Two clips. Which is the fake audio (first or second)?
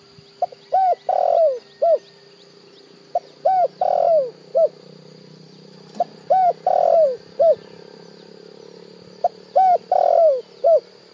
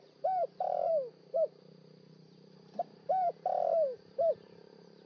second